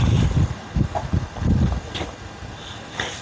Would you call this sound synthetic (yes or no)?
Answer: no